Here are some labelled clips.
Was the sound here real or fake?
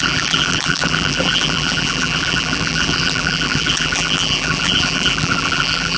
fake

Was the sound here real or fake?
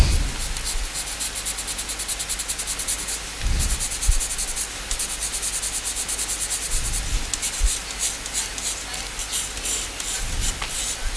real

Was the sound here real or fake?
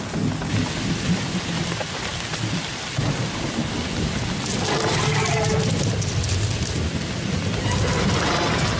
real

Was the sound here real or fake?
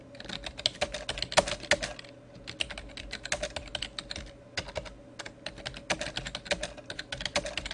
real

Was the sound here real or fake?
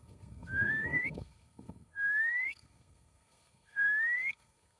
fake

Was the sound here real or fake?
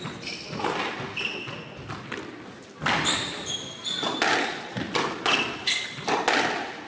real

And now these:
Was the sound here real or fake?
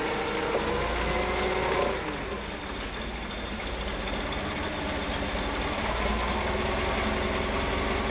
real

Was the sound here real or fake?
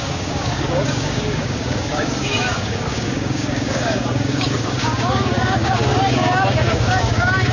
fake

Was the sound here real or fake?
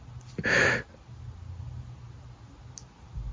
real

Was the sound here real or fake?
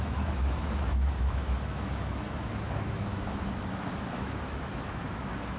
fake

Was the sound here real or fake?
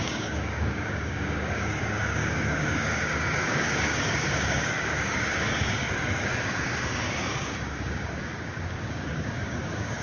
fake